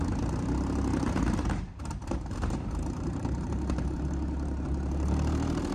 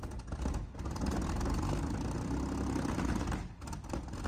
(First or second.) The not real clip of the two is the first